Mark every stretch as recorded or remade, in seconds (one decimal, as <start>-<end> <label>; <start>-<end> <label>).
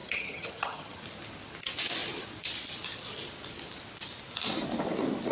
0.0-1.0 remade; 1.0-5.3 recorded